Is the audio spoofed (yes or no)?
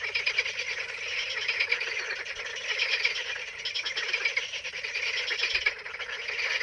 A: no